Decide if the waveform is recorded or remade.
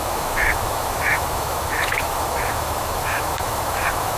remade